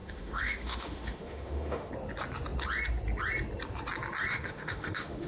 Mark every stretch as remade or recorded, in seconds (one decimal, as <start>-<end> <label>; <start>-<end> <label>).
0.0-1.9 remade; 1.9-4.3 recorded; 4.3-5.3 remade